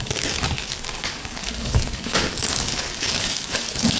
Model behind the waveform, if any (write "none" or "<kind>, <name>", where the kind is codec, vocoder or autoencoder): codec, DAC